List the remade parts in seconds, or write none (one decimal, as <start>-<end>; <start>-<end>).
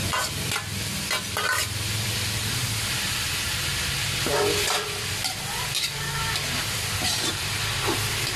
0.0-4.3